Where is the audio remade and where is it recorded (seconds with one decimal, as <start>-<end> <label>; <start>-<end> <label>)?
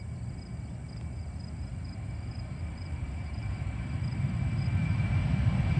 0.0-1.7 recorded; 1.7-3.5 remade; 3.5-4.8 recorded; 4.8-5.8 remade